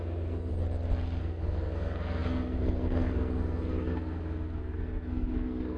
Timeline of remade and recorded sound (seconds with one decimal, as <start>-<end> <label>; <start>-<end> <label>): 0.0-0.5 remade; 0.5-1.2 recorded; 1.2-5.8 remade